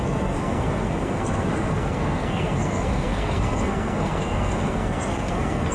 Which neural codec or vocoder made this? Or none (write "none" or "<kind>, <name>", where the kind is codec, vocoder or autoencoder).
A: codec, SNAC